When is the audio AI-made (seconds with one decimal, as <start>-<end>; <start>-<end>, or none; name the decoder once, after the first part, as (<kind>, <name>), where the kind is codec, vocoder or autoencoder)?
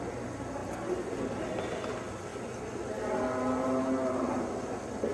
none